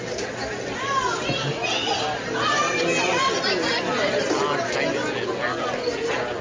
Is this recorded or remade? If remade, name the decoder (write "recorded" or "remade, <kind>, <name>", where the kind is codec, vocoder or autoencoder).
recorded